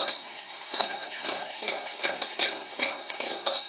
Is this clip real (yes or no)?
no